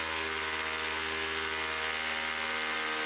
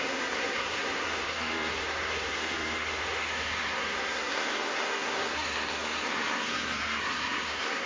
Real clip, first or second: first